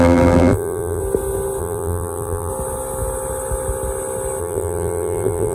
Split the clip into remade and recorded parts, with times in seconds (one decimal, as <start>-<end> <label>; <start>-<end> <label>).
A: 0.0-1.0 remade; 1.0-1.6 recorded; 1.6-2.5 remade; 2.5-4.4 recorded; 4.4-5.5 remade